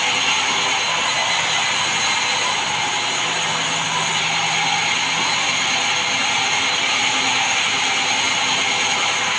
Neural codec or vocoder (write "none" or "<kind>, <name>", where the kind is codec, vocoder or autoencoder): none